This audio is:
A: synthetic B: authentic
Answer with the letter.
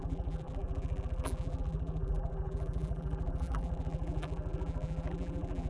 A